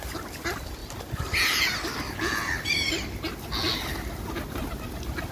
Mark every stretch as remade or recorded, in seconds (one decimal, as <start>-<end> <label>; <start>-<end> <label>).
0.0-5.3 recorded